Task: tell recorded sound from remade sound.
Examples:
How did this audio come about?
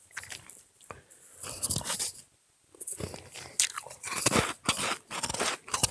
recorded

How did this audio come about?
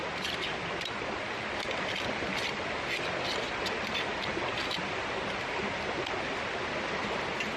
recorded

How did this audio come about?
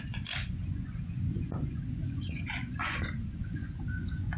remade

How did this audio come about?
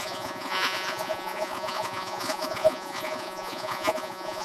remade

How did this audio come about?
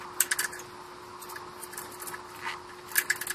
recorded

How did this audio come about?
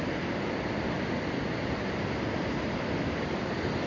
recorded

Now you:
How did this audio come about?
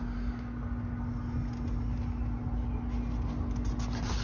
recorded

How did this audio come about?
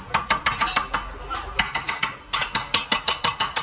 recorded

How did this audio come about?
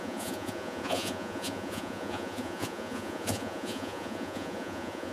remade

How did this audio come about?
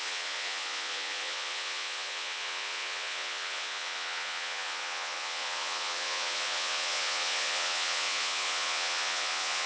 remade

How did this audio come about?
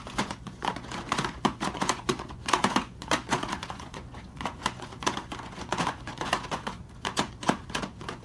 remade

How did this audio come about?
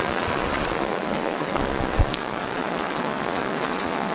remade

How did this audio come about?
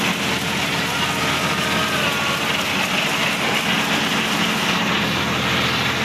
recorded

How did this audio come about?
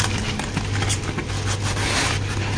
recorded